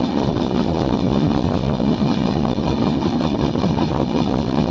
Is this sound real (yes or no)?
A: no